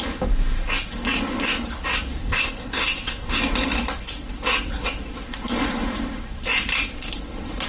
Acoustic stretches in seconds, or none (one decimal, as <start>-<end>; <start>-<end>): 0.0-2.2; 3.4-7.7